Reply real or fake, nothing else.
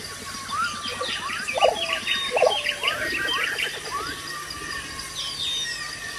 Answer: real